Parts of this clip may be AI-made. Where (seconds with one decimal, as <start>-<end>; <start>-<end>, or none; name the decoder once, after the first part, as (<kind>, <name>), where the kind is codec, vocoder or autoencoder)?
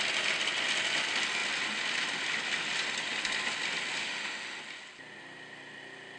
4.0-4.6 (autoencoder, DAC-VAE)